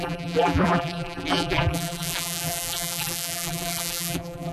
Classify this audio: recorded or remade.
remade